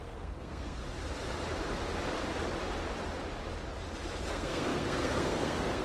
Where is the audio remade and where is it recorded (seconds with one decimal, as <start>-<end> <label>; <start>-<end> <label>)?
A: 0.0-0.8 remade; 0.8-4.3 recorded; 4.3-5.8 remade